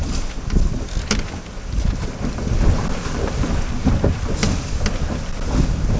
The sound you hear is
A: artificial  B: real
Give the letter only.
B